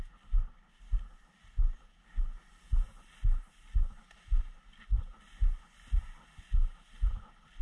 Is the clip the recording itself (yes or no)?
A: yes